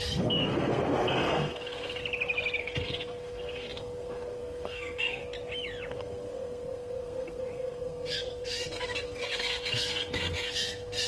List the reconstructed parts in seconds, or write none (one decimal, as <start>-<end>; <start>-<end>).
0.0-2.0; 2.6-5.2; 5.9-11.1